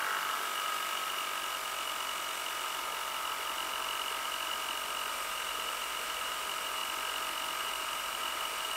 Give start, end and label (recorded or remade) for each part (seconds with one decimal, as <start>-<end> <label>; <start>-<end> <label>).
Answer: 0.0-5.1 recorded; 5.1-6.8 remade; 6.8-7.6 recorded; 7.6-8.8 remade